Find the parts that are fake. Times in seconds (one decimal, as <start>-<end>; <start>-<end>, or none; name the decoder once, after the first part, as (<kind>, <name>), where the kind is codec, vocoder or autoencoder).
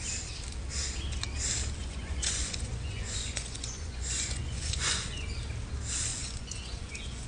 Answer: 1.8-5.4 (vocoder, Vocos); 6.1-7.3